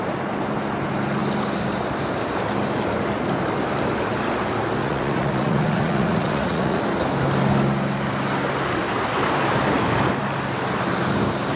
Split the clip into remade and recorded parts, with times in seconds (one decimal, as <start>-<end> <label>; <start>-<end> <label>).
0.0-4.8 recorded; 4.8-6.8 remade; 6.8-11.6 recorded